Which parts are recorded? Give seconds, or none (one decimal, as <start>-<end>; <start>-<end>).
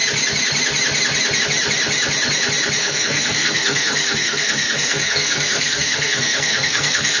0.0-2.8